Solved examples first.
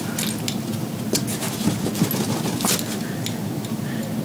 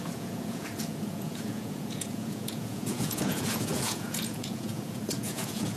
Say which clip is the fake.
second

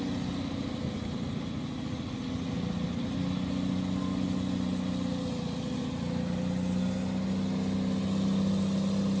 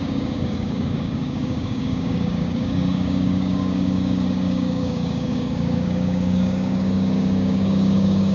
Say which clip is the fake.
second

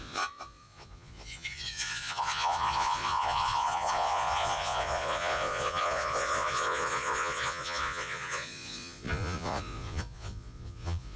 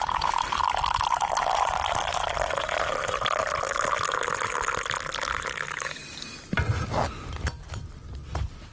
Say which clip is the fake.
first